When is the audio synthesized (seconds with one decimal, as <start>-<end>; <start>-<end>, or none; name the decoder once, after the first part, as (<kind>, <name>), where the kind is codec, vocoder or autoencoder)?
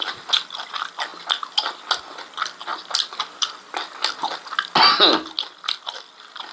none